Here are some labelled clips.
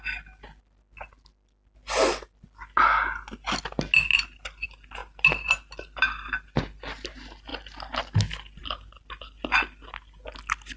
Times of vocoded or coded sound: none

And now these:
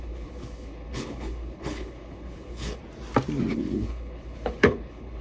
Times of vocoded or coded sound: 0.0-2.8 (codec, HILCodec); 3.5-5.2

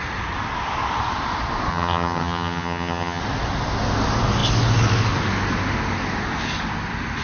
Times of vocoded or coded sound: 1.7-3.2 (vocoder, HiFi-GAN)

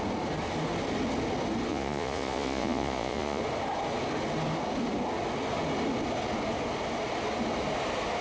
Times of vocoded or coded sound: 1.7-3.4 (vocoder, Vocos)

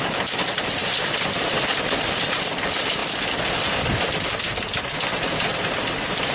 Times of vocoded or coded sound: 0.8-1.7 (vocoder, BigVGAN v2); 3.0-4.4